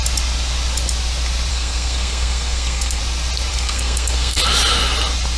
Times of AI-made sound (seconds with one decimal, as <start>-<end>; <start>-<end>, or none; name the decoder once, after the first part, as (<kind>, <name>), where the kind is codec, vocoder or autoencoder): 1.5-3.0 (codec, SNAC); 3.5-4.4